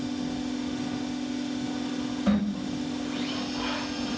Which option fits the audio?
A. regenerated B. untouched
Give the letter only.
B